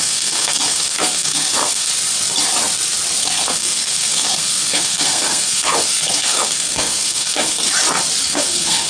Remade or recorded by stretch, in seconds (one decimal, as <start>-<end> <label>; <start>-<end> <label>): 0.0-1.9 remade; 1.9-3.2 recorded; 3.2-7.7 remade; 7.7-8.2 recorded; 8.2-8.9 remade